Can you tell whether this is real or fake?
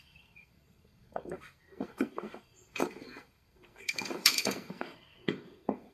fake